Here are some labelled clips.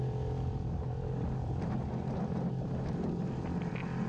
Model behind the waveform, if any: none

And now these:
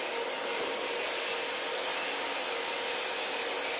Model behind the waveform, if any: none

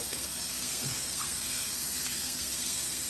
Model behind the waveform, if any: codec, SNAC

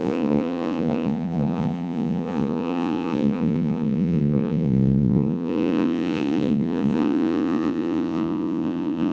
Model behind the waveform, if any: vocoder, Vocos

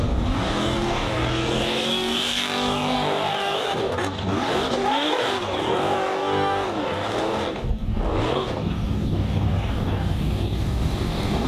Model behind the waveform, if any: codec, DAC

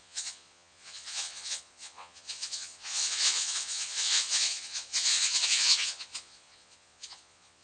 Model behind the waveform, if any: vocoder, Vocos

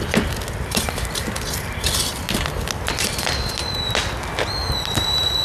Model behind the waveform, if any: none